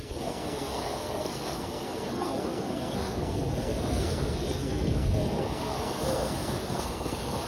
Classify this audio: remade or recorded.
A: remade